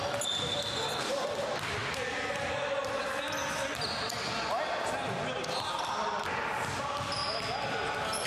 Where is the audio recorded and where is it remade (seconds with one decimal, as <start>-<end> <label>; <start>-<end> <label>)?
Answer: 0.0-7.2 recorded; 7.2-7.7 remade; 7.7-8.3 recorded